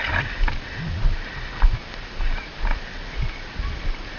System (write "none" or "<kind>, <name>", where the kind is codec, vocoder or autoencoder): none